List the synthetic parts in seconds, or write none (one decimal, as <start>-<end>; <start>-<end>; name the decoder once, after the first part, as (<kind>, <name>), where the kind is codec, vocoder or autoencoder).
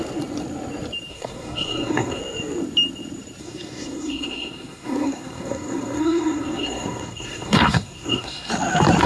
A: 1.1-2.2 (codec, SNAC); 3.4-8.5